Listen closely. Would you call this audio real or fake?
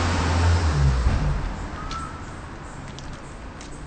real